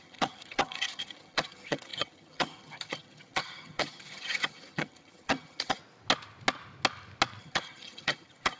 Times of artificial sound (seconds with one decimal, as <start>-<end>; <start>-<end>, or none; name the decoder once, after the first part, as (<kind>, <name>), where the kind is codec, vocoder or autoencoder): 0.0-5.8 (vocoder, HiFi-GAN); 7.4-8.6